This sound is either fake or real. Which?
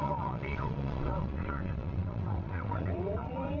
fake